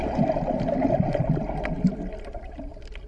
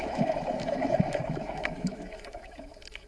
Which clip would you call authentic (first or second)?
first